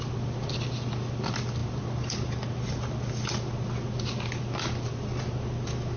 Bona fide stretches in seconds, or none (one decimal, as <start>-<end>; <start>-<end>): 0.0-6.0